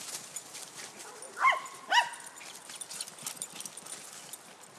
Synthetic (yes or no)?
no